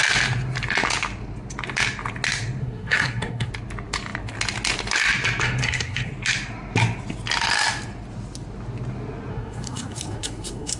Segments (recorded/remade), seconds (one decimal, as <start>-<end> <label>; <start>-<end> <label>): 0.0-2.6 recorded; 2.6-3.5 remade; 3.5-5.4 recorded; 5.4-6.1 remade; 6.1-9.3 recorded; 9.3-10.8 remade